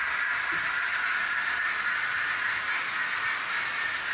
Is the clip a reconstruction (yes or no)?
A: no